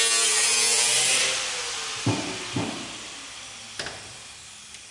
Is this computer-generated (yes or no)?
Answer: no